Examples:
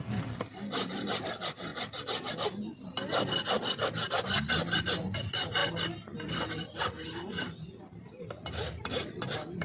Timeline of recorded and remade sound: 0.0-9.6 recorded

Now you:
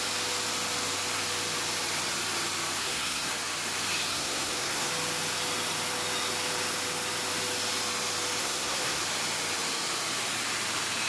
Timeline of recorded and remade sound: 0.0-2.8 recorded; 2.8-3.3 remade; 3.3-4.1 recorded; 4.1-4.9 remade; 4.9-8.4 recorded; 8.4-9.0 remade; 9.0-11.1 recorded

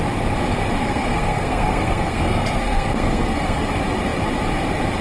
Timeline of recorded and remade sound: 0.0-0.8 recorded; 0.8-3.6 remade; 3.6-5.0 recorded

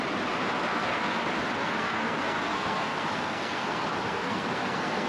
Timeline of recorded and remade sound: 0.0-0.7 recorded; 0.7-1.2 remade; 1.2-1.6 recorded; 1.6-5.1 remade

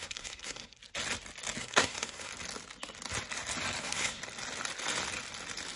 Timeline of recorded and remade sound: 0.0-0.8 remade; 0.8-1.6 recorded; 1.6-2.3 remade; 2.3-3.8 recorded; 3.8-4.2 remade; 4.2-5.8 recorded

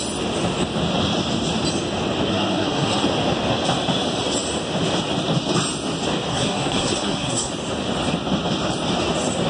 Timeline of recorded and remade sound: 0.0-2.3 recorded; 2.3-3.0 remade; 3.0-6.3 recorded; 6.3-7.5 remade; 7.5-9.5 recorded